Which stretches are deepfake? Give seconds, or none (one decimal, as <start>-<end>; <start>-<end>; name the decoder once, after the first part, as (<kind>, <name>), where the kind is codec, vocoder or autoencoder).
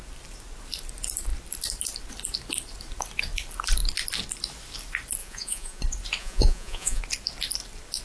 5.2-5.8 (vocoder, Vocos); 6.2-7.0